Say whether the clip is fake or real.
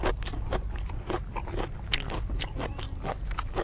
real